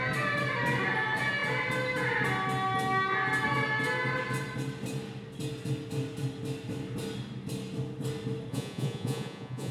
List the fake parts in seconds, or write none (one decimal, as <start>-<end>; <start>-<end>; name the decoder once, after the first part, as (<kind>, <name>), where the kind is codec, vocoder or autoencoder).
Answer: 8.5-9.7 (vocoder, Vocos)